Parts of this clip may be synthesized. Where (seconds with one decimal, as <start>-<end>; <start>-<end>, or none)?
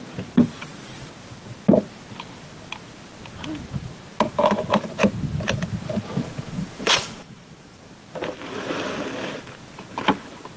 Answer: 6.2-7.9